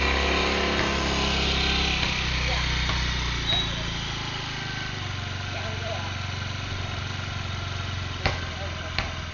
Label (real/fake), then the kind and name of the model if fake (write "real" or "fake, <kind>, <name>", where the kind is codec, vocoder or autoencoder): real